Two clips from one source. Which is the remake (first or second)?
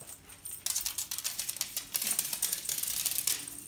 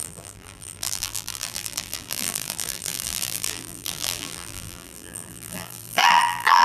second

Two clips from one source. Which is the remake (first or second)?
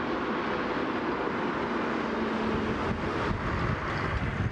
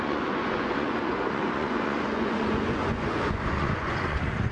second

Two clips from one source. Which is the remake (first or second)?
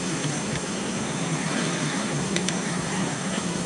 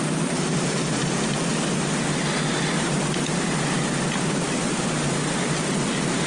first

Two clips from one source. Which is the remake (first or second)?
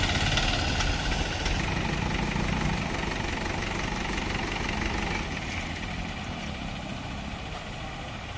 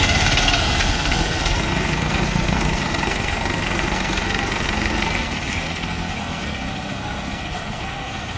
second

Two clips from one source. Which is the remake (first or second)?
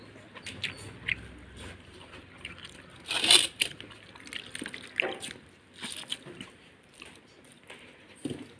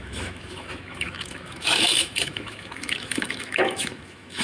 second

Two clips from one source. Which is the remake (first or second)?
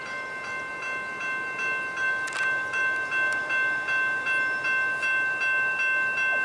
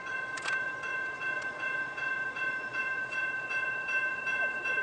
second